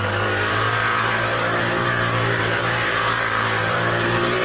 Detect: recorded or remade remade